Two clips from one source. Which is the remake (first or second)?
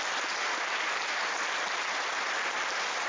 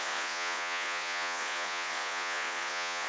second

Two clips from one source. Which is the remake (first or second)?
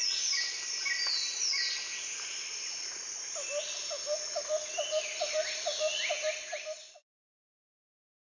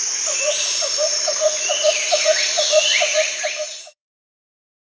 second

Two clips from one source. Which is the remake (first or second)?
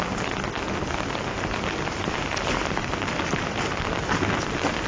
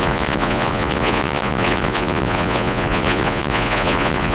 second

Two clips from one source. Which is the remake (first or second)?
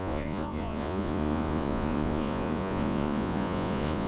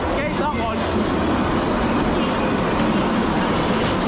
first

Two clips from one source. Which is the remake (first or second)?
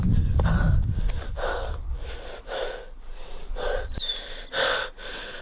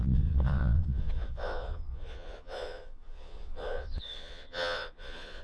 second